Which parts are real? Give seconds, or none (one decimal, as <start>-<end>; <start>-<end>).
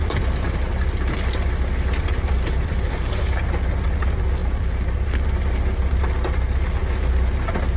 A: 0.0-0.6; 3.1-4.4; 6.0-7.8